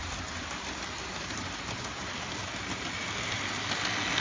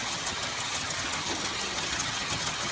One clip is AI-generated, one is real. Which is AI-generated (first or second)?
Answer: second